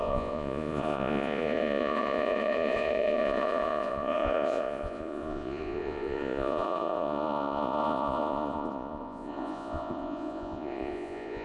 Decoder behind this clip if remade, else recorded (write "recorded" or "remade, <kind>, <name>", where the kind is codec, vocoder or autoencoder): remade, vocoder, Vocos